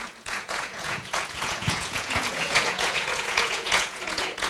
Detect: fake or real fake